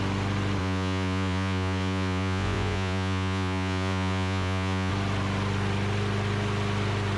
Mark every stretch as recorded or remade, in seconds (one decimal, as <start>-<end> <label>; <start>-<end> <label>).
0.0-0.6 recorded; 0.6-4.9 remade; 4.9-7.2 recorded